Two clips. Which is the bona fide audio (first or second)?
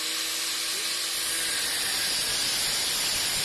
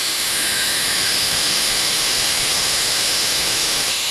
first